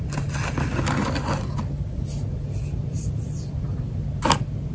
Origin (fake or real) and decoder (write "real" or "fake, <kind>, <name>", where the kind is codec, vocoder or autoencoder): real